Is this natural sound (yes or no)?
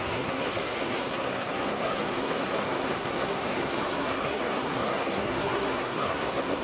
no